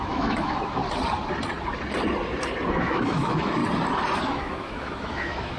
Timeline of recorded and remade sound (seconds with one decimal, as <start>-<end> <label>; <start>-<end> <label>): 0.0-0.8 remade; 0.8-2.8 recorded; 2.8-3.6 remade; 3.6-4.2 recorded; 4.2-5.6 remade